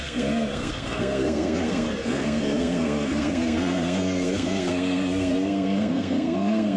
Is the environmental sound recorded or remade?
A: remade